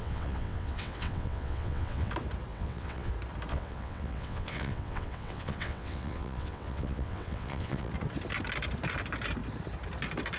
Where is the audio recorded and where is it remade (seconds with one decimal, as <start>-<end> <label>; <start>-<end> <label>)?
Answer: 0.0-2.1 remade; 2.1-2.5 recorded; 2.5-3.1 remade; 3.1-3.5 recorded; 3.5-7.9 remade; 7.9-10.4 recorded